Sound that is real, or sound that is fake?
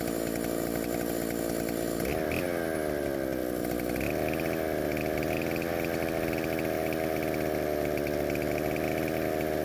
real